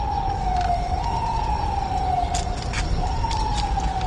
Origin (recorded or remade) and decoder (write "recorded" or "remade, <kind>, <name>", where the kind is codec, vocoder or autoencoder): recorded